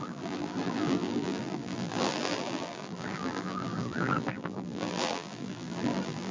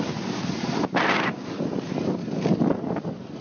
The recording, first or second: second